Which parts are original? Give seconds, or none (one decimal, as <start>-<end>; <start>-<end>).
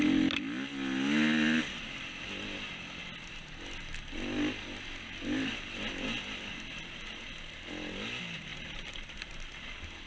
0.0-10.1